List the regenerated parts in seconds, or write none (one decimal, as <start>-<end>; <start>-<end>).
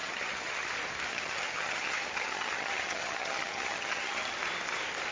0.0-0.7; 1.1-4.2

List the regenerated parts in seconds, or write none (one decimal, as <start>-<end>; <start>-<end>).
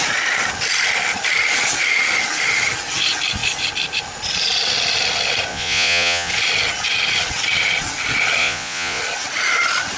5.5-6.3; 8.4-9.0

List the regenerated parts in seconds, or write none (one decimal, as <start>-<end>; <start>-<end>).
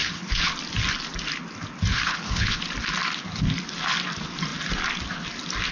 0.0-0.5; 1.9-2.6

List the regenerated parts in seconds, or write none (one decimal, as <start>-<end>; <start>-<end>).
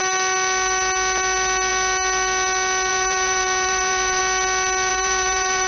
2.9-4.2; 4.9-5.7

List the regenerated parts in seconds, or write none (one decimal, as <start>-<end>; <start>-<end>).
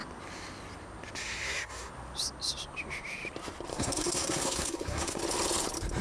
1.2-1.9; 3.7-5.2